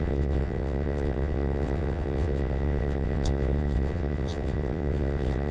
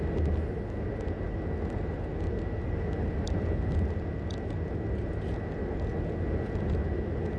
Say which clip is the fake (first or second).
first